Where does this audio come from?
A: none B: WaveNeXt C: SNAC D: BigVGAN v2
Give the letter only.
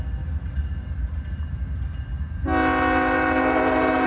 A